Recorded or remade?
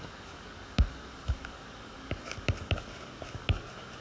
remade